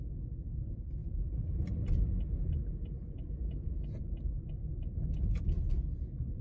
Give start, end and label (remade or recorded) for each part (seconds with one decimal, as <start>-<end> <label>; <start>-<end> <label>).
0.0-4.7 remade; 4.7-6.4 recorded